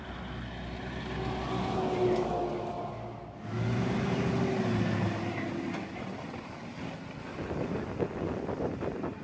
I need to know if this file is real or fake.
real